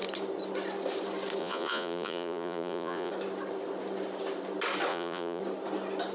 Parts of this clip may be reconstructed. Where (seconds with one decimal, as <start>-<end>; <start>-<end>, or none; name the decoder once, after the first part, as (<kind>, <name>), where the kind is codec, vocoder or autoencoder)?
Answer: 1.4-3.1 (vocoder, Vocos); 4.9-5.4